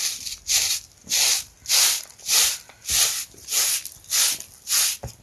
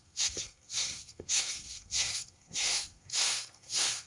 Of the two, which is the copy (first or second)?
second